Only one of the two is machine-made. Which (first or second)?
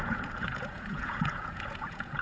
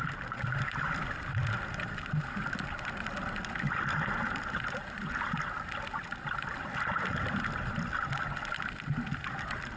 first